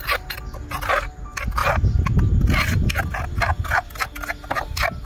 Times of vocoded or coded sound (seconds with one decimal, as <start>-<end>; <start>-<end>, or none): none